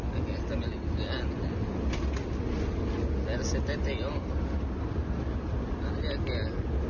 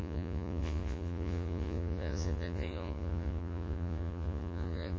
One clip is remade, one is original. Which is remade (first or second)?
second